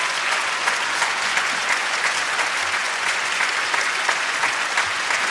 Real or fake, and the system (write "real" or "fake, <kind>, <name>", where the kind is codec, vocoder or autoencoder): fake, vocoder, Vocos